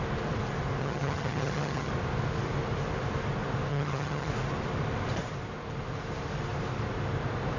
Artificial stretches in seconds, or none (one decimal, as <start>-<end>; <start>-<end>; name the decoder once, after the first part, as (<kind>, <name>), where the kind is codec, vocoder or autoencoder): 0.8-1.9 (vocoder, HiFi-GAN); 3.7-4.3